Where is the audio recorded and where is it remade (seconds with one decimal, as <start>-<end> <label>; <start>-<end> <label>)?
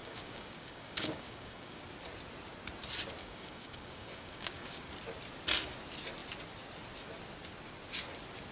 0.0-1.8 remade; 1.8-3.2 recorded; 3.2-4.9 remade; 4.9-8.5 recorded